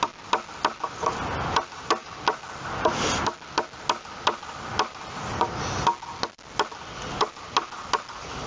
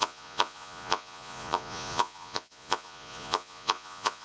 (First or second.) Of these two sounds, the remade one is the second